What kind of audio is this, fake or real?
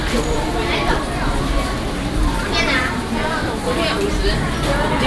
real